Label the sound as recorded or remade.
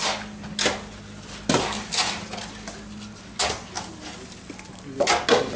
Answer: recorded